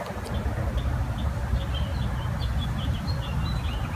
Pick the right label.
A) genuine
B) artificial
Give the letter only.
A